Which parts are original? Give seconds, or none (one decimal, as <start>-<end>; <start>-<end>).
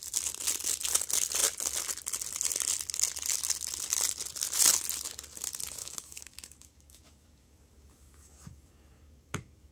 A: 0.0-5.8